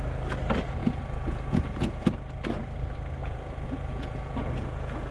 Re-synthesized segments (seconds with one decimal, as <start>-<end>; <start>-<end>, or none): 0.8-2.1; 3.2-5.1